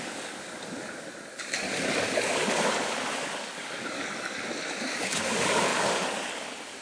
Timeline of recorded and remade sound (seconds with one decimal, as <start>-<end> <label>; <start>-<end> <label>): 0.0-6.8 remade